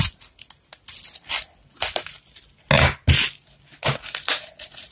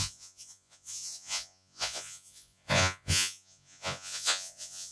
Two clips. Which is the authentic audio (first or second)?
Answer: first